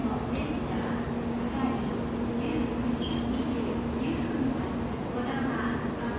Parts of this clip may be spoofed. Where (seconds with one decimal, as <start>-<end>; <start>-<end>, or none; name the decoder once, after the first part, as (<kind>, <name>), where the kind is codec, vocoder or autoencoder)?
none